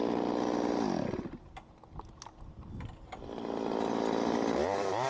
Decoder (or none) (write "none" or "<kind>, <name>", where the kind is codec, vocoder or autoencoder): none